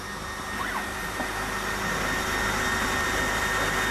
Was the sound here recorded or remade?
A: recorded